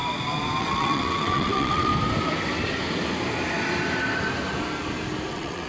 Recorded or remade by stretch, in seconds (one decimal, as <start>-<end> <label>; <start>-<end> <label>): 0.0-0.6 recorded; 0.6-1.9 remade; 1.9-5.3 recorded; 5.3-5.7 remade